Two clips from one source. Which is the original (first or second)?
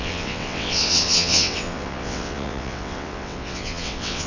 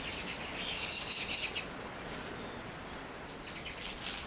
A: second